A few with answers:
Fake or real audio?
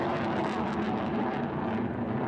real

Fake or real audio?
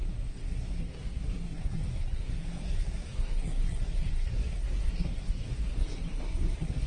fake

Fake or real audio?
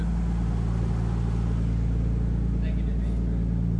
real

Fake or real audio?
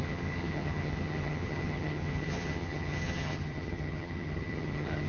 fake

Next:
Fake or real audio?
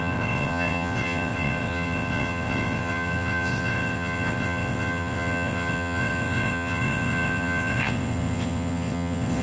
fake